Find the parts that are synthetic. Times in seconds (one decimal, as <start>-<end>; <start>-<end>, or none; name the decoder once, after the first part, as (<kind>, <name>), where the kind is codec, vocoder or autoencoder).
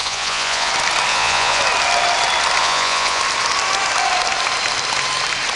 0.0-0.7 (vocoder, Vocos); 1.1-1.6; 2.6-3.2